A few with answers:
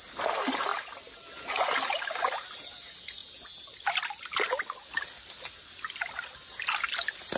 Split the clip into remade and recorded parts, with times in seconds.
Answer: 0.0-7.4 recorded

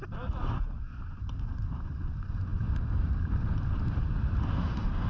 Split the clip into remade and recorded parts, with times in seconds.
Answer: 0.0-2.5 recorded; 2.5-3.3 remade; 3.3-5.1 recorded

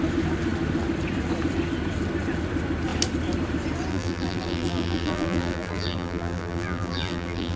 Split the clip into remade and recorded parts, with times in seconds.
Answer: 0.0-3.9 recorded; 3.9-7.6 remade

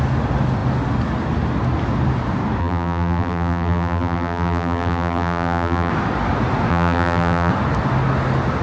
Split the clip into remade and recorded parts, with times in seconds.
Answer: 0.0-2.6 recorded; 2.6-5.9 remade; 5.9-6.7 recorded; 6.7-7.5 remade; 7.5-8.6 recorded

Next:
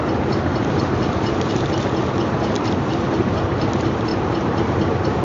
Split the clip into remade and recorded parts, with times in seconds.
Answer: 0.0-5.2 remade

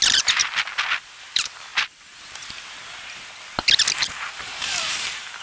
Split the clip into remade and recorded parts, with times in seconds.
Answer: 0.0-0.4 remade; 0.4-1.2 recorded; 1.2-1.7 remade; 1.7-4.0 recorded; 4.0-5.4 remade

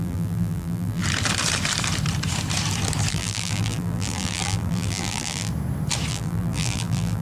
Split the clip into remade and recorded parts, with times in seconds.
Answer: 0.0-1.0 remade; 1.0-3.1 recorded; 3.1-5.5 remade; 5.5-6.1 recorded; 6.1-7.2 remade